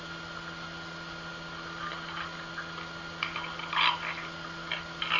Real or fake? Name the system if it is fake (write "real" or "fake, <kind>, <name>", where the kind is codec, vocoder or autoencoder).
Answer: real